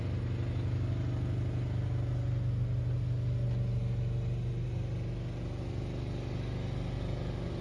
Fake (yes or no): no